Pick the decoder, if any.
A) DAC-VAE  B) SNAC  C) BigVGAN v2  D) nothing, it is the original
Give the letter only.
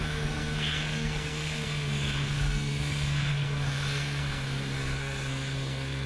B